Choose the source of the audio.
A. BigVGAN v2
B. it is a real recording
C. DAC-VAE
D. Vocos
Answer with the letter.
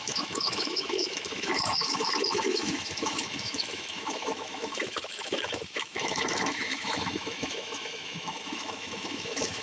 C